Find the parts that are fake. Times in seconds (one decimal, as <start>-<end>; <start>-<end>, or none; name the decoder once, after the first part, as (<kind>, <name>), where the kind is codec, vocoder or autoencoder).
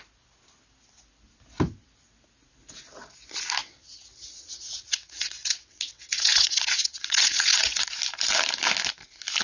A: 3.6-7.8 (vocoder, WaveNeXt)